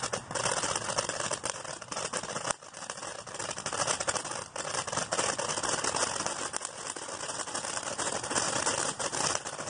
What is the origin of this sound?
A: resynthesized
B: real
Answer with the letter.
B